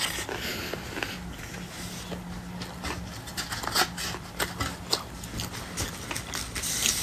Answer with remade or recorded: recorded